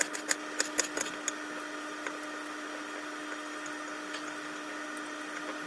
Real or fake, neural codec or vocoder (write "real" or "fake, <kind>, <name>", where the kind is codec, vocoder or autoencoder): real